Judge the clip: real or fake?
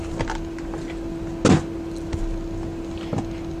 real